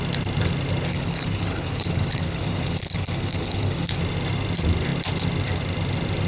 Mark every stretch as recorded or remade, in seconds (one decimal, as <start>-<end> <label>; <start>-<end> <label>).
0.0-0.9 recorded; 0.9-4.0 remade; 4.0-6.3 recorded